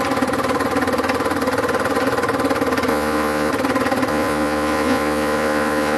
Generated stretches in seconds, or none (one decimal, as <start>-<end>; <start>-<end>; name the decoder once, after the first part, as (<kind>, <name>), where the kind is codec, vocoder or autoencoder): 2.9-3.5 (vocoder, Vocos); 4.1-6.0